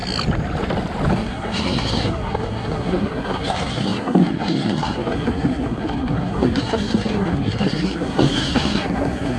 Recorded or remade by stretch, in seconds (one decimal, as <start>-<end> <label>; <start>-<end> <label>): 0.0-1.1 recorded; 1.1-9.4 remade